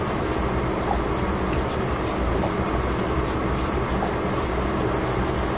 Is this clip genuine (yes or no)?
yes